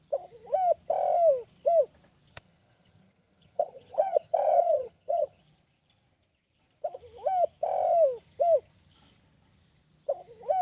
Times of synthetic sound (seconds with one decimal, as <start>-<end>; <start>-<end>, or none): 2.3-5.4